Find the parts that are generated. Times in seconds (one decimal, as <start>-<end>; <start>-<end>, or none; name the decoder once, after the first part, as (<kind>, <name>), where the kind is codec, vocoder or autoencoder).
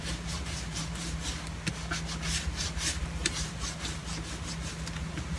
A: 0.0-1.2 (vocoder, BigVGAN v2); 2.6-4.0; 5.0-5.4